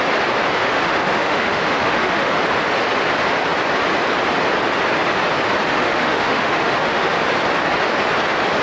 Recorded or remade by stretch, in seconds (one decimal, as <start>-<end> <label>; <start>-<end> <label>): 0.0-0.6 recorded; 0.6-2.3 remade; 2.3-5.7 recorded; 5.7-7.2 remade; 7.2-8.6 recorded